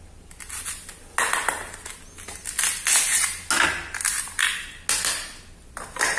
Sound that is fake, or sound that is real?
real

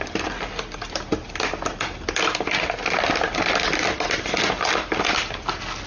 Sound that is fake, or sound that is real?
real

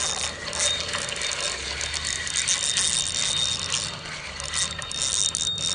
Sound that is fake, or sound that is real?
real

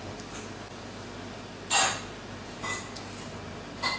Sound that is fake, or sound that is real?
real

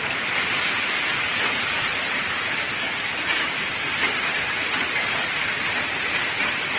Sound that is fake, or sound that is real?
real